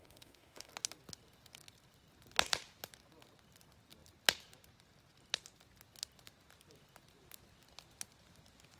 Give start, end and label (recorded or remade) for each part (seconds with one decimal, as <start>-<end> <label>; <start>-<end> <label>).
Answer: 0.0-0.7 remade; 0.7-8.8 recorded